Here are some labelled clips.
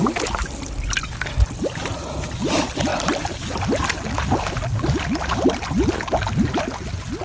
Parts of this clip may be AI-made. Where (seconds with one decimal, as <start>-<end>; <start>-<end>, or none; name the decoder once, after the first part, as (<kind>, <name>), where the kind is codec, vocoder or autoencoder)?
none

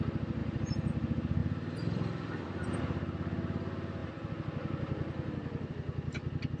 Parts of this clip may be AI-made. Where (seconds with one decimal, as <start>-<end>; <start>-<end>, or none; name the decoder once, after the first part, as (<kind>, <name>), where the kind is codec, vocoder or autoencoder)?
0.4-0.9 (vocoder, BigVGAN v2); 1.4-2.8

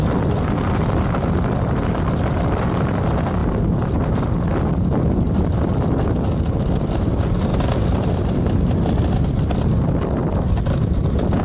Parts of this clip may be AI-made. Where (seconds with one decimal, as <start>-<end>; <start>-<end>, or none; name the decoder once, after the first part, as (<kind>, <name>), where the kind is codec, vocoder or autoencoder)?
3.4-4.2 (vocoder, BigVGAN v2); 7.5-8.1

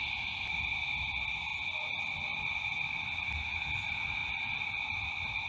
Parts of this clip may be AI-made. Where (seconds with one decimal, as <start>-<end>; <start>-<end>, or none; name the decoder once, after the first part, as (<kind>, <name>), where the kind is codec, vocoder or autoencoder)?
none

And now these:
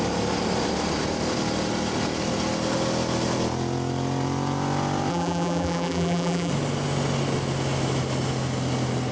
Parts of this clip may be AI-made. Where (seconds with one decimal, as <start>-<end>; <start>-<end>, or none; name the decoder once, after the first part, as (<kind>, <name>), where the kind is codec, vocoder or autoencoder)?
5.1-6.5 (vocoder, BigVGAN v2)

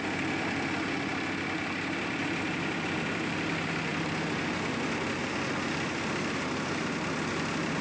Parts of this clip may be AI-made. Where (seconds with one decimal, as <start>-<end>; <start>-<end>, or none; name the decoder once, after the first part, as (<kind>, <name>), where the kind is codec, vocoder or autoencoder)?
1.1-3.4 (vocoder, BigVGAN v2)